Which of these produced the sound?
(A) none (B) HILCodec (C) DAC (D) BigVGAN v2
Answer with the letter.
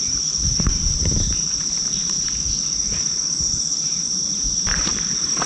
D